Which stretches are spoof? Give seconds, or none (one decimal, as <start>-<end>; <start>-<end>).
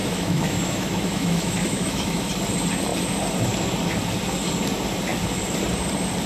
0.0-2.3